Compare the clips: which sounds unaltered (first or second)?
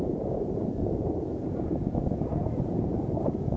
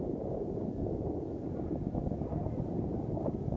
second